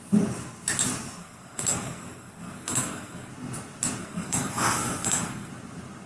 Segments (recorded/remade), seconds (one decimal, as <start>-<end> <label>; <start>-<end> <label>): 0.0-1.2 recorded; 1.2-3.3 remade; 3.3-4.0 recorded; 4.0-5.5 remade; 5.5-6.1 recorded